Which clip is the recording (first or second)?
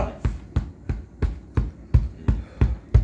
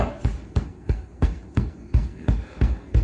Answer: first